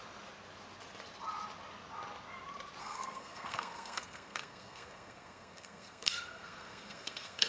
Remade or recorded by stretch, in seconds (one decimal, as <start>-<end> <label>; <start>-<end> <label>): 0.0-2.8 recorded; 2.8-7.5 remade